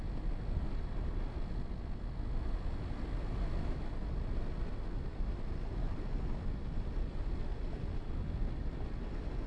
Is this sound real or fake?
real